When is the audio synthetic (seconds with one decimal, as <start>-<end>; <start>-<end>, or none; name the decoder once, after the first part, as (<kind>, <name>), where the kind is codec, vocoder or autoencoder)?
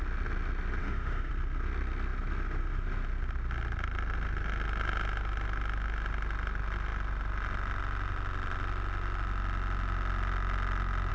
0.8-1.3 (autoencoder, DAC-VAE)